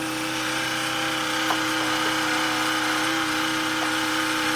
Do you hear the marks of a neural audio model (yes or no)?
no